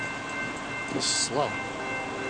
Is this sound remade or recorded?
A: recorded